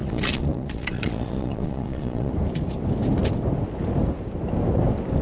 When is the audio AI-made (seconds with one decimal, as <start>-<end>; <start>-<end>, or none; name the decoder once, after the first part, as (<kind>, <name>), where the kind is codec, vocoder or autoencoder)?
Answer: 0.0-2.3 (vocoder, Vocos)